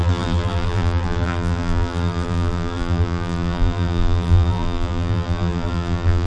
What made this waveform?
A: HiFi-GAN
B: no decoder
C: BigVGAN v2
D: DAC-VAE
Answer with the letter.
C